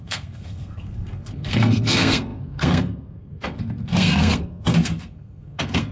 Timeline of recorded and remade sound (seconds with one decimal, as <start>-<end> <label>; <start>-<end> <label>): 0.0-5.9 remade